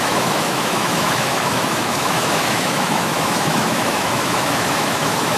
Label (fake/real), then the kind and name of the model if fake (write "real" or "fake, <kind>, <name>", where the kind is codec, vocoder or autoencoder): fake, autoencoder, DAC-VAE